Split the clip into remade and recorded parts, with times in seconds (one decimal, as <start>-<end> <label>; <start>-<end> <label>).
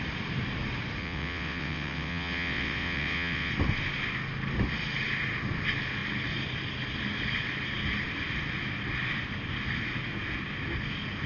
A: 0.0-1.0 recorded; 1.0-3.5 remade; 3.5-11.3 recorded